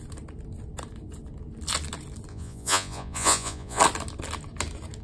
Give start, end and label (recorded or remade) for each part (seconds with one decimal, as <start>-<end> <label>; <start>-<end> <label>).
0.0-2.3 recorded; 2.3-3.8 remade; 3.8-5.0 recorded